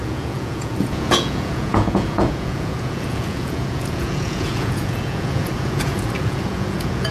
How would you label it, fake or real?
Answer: fake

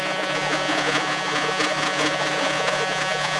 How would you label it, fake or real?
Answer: fake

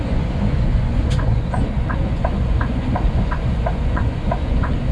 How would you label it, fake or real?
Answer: fake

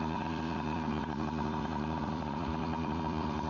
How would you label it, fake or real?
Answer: fake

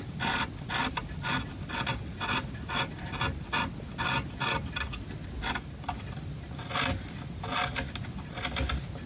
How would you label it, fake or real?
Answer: real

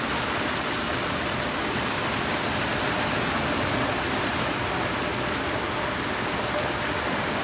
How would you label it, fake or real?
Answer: real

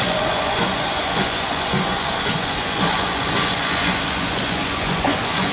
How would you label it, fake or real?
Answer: fake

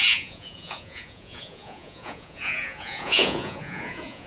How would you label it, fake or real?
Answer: fake